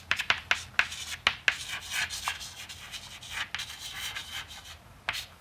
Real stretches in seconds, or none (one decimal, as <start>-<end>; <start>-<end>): 0.4-3.6